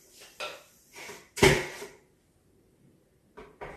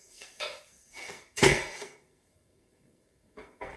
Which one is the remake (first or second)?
second